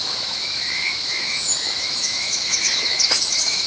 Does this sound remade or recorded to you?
remade